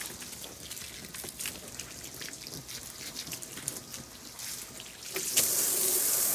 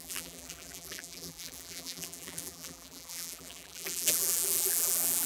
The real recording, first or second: first